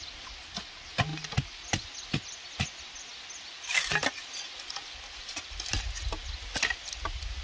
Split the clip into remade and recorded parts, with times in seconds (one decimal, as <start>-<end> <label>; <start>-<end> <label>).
0.0-7.4 recorded